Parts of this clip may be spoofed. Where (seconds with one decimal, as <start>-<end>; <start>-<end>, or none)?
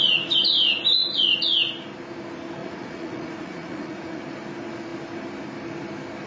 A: 2.6-4.2